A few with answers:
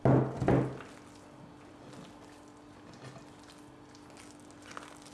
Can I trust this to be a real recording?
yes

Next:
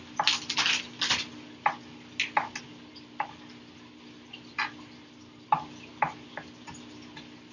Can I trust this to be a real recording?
yes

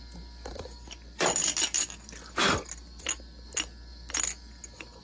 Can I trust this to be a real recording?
yes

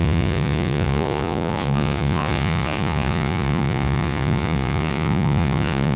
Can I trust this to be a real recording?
no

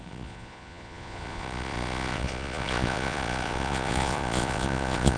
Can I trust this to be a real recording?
no